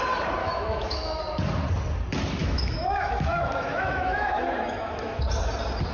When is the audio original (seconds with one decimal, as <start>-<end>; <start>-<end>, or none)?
0.0-0.4; 1.2-2.4; 5.2-5.9